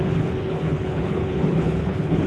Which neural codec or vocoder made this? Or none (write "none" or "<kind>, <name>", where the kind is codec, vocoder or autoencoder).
codec, HILCodec